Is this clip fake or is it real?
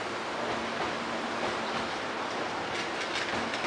real